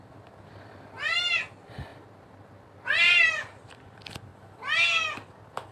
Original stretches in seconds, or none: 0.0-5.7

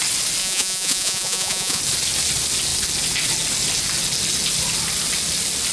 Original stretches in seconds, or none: 0.0-0.4; 1.8-5.7